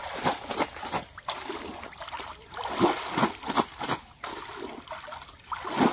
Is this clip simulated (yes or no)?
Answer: no